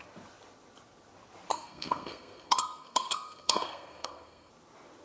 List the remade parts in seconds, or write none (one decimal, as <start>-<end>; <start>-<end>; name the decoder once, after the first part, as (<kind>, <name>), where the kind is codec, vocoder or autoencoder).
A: 1.5-4.5 (codec, SNAC)